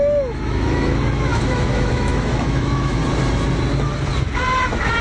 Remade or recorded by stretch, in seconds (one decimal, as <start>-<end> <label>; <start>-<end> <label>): 0.0-3.0 remade; 3.0-5.0 recorded